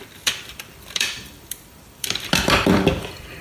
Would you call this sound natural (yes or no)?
no